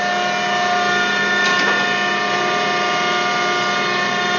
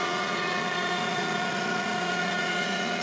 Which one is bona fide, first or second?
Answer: first